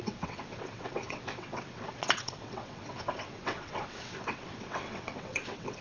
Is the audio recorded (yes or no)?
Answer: no